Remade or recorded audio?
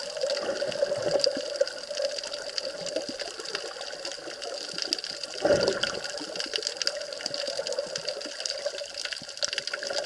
recorded